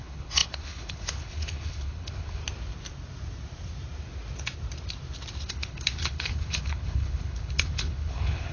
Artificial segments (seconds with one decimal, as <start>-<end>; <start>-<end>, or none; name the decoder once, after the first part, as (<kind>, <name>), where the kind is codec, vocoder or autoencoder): 0.0-2.4 (codec, HILCodec); 5.5-8.5